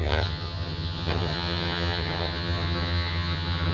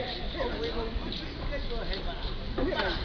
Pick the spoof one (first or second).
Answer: first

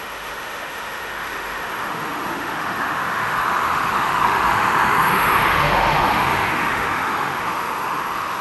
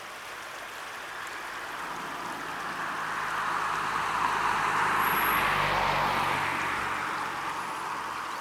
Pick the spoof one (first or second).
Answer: first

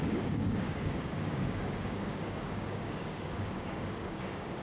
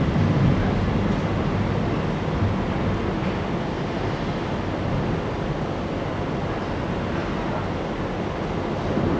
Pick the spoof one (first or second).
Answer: first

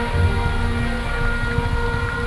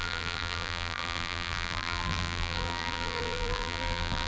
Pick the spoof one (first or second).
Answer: second